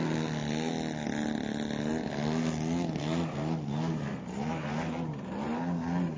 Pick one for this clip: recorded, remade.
recorded